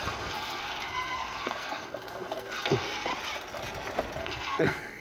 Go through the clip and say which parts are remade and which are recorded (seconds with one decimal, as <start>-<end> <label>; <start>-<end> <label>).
0.0-3.1 remade; 3.1-4.2 recorded; 4.2-5.0 remade